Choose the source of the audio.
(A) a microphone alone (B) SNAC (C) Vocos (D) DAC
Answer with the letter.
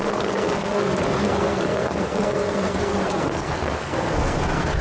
B